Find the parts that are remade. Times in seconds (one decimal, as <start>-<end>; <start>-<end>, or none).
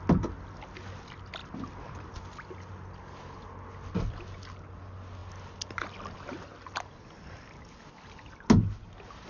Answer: none